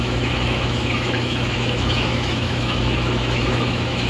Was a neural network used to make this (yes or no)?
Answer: yes